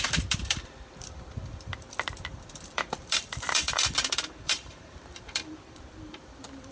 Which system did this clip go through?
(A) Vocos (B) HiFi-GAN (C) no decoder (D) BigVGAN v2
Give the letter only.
D